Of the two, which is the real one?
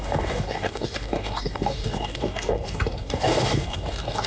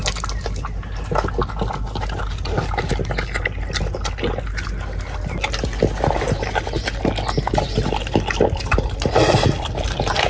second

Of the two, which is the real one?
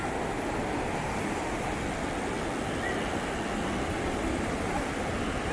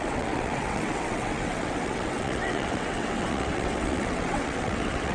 first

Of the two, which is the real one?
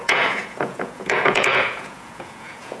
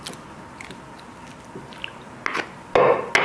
second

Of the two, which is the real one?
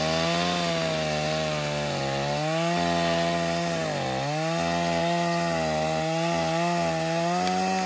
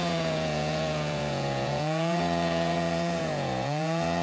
first